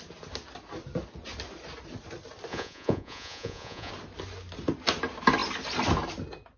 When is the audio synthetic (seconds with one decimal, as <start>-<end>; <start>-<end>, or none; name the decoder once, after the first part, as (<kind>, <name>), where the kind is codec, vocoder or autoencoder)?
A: 2.5-3.9 (vocoder, Vocos)

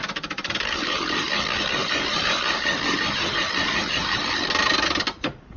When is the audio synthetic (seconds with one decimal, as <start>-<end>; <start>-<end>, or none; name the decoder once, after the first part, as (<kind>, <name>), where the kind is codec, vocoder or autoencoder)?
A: 0.0-1.3 (vocoder, BigVGAN v2); 1.8-5.6

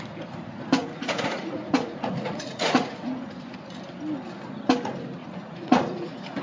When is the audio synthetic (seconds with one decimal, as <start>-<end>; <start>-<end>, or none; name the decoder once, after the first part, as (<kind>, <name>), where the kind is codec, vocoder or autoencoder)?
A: 0.8-3.3 (vocoder, Vocos); 5.2-6.4

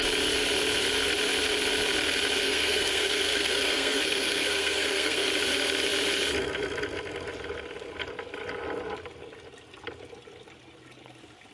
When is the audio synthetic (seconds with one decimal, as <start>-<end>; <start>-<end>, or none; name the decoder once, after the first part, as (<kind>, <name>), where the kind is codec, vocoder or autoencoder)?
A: 2.4-5.3 (codec, SNAC)

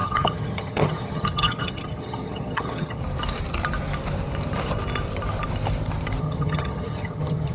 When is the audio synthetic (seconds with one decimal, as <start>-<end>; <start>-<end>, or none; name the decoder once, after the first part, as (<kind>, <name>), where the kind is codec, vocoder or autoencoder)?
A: 0.0-3.0 (vocoder, HiFi-GAN); 6.2-7.5